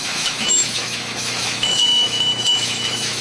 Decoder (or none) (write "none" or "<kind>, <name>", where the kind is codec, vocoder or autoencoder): autoencoder, DAC-VAE